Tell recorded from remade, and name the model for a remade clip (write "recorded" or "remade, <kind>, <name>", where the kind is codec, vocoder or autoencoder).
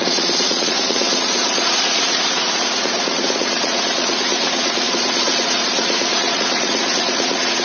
remade, vocoder, Vocos